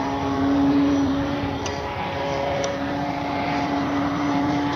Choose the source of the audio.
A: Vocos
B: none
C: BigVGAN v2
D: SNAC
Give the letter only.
C